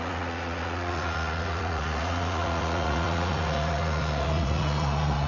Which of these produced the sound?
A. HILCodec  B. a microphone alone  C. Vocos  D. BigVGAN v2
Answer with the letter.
C